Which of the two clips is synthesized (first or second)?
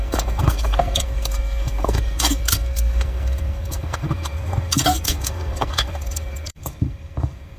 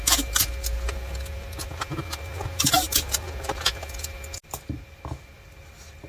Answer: first